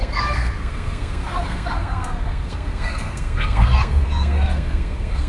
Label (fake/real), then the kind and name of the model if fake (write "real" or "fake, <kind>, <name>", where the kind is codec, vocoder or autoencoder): fake, codec, SNAC